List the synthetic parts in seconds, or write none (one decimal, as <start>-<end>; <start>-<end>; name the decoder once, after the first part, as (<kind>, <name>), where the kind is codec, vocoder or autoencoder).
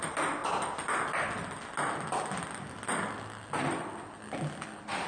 none